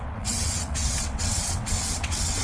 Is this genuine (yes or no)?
no